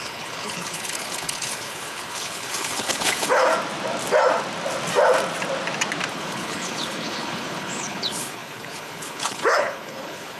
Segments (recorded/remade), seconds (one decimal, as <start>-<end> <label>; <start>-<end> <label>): 0.0-3.5 remade; 3.5-6.1 recorded; 6.1-10.4 remade